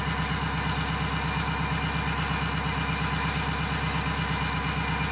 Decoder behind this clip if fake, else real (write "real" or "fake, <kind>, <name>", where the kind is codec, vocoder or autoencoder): real